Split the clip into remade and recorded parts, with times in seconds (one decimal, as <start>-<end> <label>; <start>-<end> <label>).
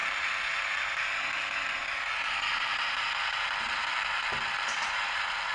0.0-5.5 recorded